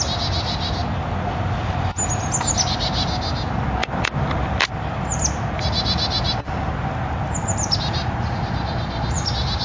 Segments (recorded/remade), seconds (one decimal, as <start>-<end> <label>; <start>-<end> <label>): 0.0-9.6 recorded